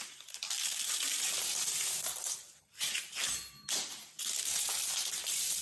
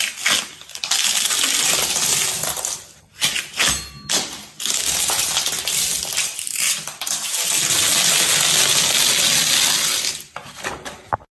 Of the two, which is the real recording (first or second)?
second